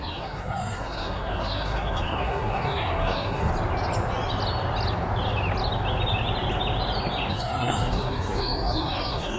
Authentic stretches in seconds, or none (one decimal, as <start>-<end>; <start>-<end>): 3.5-7.3